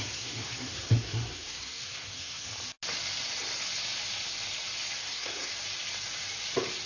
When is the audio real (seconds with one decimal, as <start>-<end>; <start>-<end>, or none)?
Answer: 2.5-5.0; 5.5-6.9